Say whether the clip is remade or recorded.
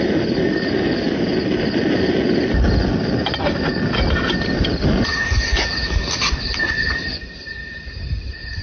recorded